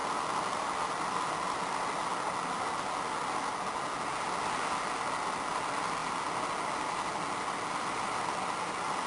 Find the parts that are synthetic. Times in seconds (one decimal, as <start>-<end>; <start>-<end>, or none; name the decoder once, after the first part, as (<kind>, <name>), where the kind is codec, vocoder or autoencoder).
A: none